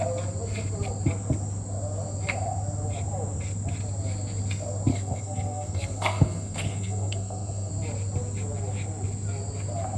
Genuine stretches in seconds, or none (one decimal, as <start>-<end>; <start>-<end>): 0.0-4.9; 7.7-10.0